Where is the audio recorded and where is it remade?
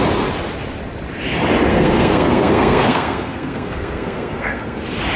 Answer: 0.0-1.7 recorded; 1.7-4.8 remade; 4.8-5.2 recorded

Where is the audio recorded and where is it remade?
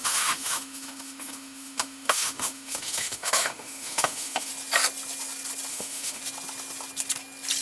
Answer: 0.0-4.5 remade; 4.5-5.7 recorded; 5.7-6.2 remade; 6.2-7.6 recorded